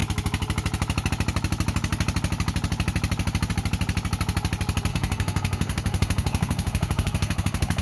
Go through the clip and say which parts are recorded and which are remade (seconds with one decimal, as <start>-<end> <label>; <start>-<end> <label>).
0.0-4.9 recorded; 4.9-7.8 remade